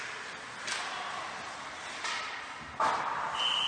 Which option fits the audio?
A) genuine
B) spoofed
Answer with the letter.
A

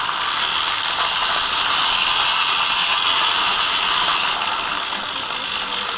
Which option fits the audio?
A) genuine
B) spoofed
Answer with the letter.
A